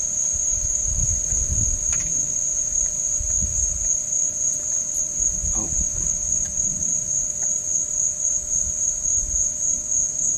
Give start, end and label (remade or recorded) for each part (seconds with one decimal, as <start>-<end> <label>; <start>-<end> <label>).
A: 0.0-7.5 remade; 7.5-9.0 recorded; 9.0-10.4 remade